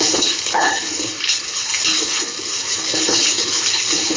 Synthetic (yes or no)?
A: yes